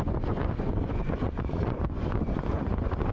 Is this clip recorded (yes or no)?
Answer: no